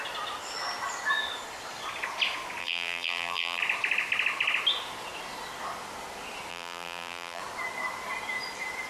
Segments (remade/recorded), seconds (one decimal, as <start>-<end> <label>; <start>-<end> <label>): 0.0-2.6 recorded; 2.6-3.6 remade; 3.6-6.5 recorded; 6.5-7.4 remade; 7.4-8.9 recorded